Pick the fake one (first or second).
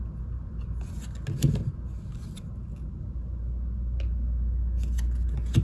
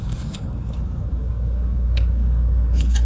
second